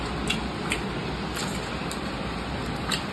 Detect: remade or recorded recorded